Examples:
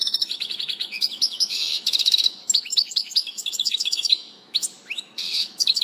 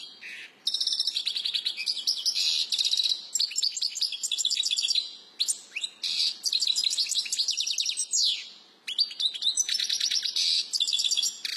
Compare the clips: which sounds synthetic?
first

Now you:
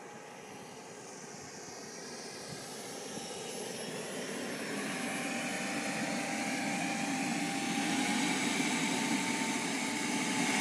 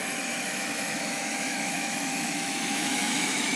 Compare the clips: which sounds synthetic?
second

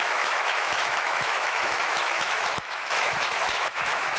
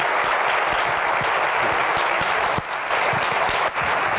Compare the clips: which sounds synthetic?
first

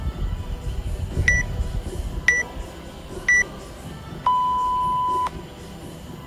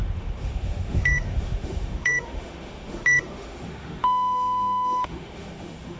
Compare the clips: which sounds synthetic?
second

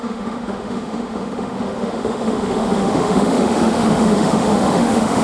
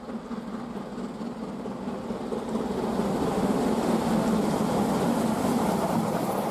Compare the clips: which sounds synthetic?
first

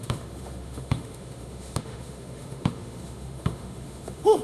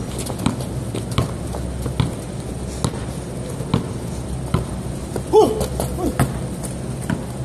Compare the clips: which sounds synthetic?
first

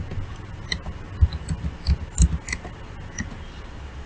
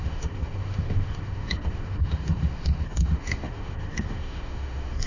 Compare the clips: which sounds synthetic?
second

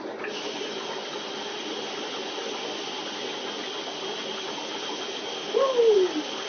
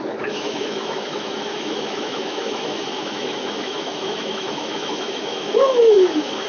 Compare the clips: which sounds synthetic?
second